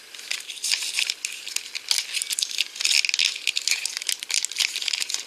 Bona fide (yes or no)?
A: yes